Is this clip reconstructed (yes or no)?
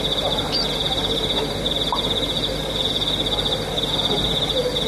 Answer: no